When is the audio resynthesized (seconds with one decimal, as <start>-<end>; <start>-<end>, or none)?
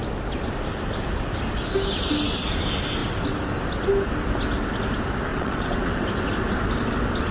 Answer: 5.3-6.0